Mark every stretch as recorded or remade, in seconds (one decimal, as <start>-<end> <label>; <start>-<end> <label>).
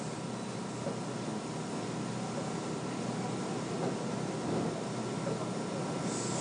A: 0.0-6.4 recorded